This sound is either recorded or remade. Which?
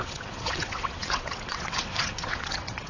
remade